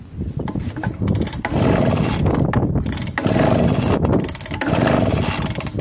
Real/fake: real